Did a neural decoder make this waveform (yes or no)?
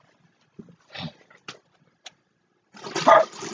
no